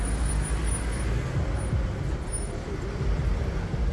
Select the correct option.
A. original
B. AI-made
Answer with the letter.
A